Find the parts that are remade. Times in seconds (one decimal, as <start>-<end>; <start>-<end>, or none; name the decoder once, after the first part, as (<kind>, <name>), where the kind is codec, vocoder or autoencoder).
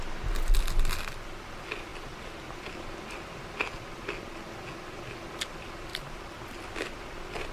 5.9-6.4 (vocoder, BigVGAN v2)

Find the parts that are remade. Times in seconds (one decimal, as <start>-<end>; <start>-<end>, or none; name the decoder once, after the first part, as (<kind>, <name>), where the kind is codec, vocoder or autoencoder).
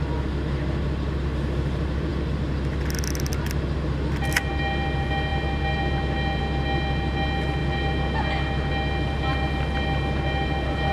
7.6-8.7 (vocoder, BigVGAN v2)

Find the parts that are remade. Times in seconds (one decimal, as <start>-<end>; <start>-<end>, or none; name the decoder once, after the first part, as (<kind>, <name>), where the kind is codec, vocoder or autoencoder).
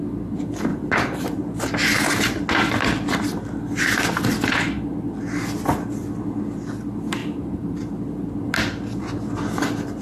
0.7-1.4 (vocoder, BigVGAN v2); 7.2-7.9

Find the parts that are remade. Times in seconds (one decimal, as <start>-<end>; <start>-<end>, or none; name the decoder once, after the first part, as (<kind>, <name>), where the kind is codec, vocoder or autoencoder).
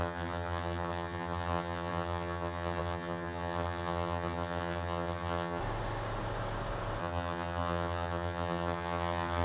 0.0-5.6 (vocoder, HiFi-GAN); 7.0-9.4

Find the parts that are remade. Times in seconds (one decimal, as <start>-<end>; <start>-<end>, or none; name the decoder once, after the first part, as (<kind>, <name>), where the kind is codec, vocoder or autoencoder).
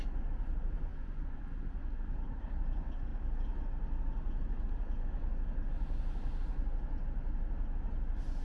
0.9-1.6 (vocoder, Vocos)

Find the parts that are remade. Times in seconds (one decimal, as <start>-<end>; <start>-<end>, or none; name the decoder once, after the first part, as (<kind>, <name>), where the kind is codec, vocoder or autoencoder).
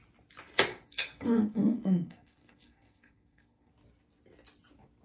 0.7-3.7 (codec, SNAC)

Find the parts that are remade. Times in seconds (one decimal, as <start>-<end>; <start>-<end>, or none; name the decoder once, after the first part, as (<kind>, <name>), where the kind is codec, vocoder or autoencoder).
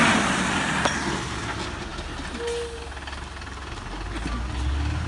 none